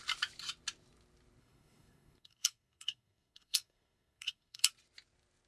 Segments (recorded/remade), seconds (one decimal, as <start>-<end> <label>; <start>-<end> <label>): 0.0-1.4 recorded; 1.4-4.7 remade; 4.7-5.5 recorded